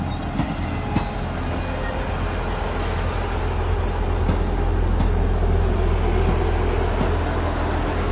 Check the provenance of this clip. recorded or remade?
recorded